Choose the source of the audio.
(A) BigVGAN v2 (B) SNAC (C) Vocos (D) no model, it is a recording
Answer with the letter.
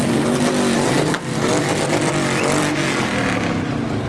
D